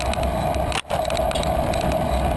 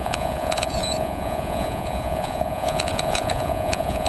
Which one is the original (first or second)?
first